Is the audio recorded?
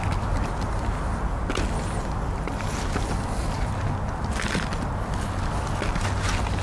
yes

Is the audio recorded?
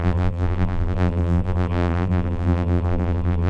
no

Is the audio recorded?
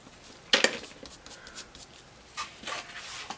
yes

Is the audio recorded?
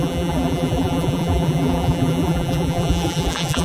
no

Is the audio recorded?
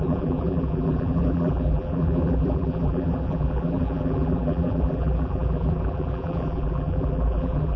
no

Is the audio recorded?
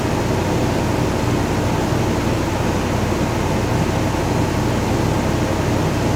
yes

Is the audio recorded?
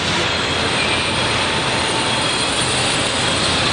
yes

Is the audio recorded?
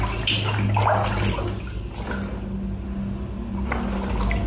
yes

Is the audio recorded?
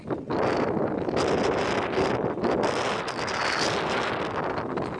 yes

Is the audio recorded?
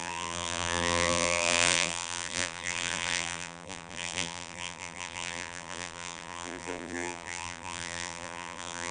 no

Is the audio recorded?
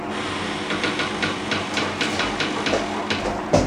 yes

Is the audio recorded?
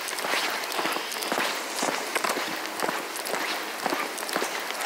yes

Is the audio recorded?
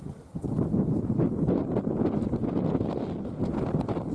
yes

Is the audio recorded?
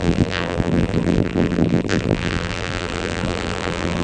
no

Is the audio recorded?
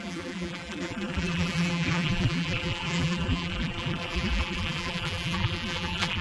no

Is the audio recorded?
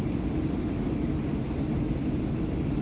yes